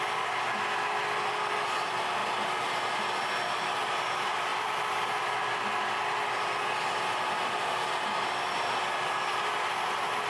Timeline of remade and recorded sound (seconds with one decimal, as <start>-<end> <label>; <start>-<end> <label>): 0.0-10.3 recorded